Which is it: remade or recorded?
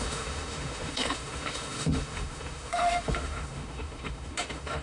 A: remade